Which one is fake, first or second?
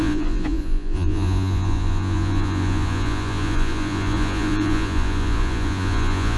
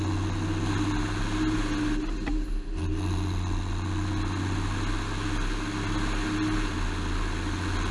first